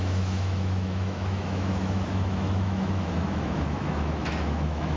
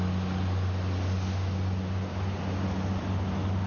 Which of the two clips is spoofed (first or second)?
first